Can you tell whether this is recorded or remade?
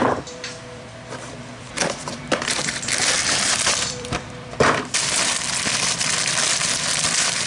remade